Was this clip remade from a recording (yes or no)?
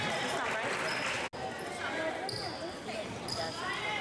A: no